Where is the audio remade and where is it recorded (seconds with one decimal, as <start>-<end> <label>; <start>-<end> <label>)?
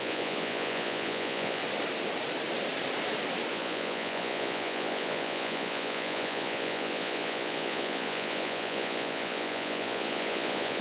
0.0-1.6 remade; 1.6-3.5 recorded; 3.5-10.8 remade